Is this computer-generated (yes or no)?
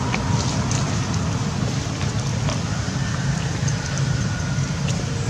no